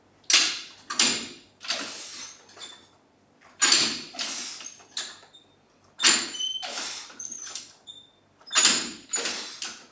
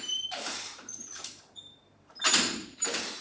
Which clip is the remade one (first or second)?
second